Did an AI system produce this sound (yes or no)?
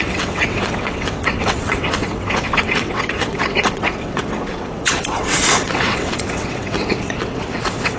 yes